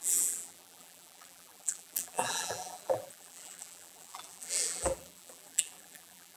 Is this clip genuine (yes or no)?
no